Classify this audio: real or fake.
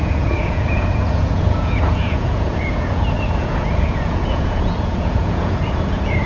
fake